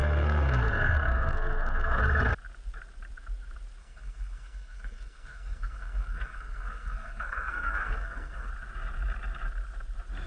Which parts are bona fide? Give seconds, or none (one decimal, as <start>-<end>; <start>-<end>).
2.0-3.8; 8.5-10.3